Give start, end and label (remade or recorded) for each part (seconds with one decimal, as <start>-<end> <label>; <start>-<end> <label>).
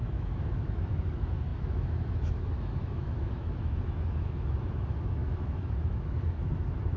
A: 0.0-7.0 remade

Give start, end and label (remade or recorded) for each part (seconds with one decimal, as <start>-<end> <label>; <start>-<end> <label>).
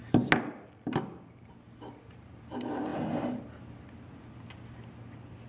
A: 0.0-5.5 recorded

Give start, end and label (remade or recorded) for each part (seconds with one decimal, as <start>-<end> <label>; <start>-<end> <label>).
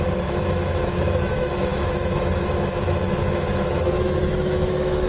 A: 0.0-5.1 remade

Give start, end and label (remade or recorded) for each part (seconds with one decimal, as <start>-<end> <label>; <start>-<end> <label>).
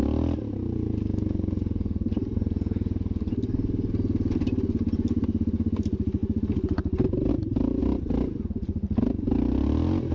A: 0.0-10.1 recorded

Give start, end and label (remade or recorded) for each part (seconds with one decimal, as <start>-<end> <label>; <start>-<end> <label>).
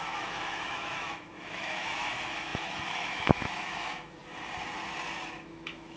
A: 0.0-4.2 remade; 4.2-5.3 recorded; 5.3-6.0 remade